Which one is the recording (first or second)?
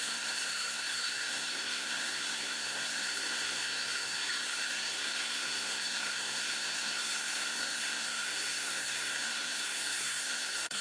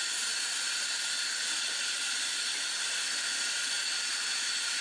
second